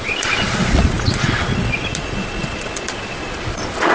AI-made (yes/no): yes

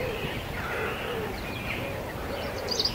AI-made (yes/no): no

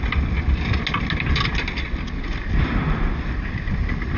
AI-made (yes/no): no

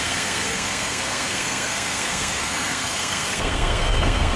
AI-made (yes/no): yes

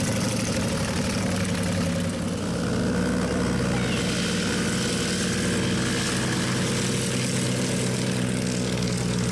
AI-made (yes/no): no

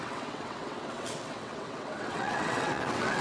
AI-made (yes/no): yes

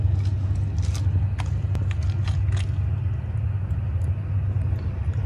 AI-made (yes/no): no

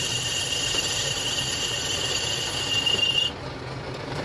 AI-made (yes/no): yes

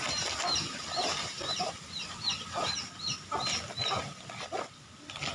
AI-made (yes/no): no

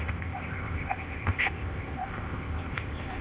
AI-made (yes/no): yes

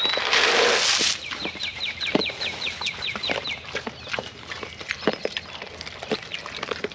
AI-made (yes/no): no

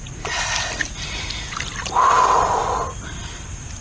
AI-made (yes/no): no